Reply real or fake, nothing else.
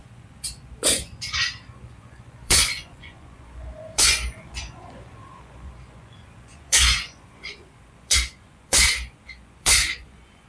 fake